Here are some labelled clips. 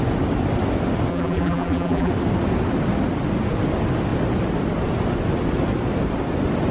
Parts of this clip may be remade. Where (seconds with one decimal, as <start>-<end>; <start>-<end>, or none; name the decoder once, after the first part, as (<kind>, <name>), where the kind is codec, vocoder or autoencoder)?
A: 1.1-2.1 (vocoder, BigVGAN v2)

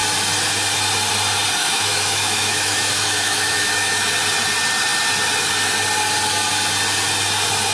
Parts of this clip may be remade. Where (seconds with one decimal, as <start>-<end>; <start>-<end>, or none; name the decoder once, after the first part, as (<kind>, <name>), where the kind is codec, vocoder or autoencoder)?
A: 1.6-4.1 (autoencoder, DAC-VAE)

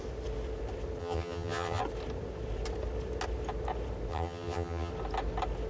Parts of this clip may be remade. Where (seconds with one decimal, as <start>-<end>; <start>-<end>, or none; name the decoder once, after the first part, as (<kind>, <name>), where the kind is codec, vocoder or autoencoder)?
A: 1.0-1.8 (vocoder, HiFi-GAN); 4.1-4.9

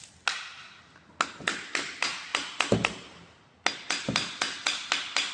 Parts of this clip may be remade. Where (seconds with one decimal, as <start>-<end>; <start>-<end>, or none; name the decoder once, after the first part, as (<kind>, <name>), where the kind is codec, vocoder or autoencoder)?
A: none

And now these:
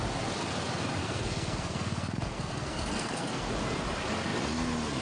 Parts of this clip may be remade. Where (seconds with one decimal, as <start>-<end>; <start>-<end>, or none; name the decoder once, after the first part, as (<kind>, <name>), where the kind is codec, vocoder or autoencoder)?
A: 1.0-3.5 (codec, SNAC)

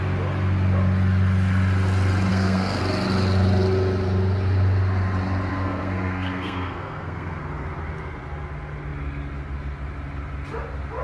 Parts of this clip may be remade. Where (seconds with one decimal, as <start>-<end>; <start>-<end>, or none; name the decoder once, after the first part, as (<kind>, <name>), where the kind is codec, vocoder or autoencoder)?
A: 2.3-2.8 (codec, SNAC); 5.5-7.4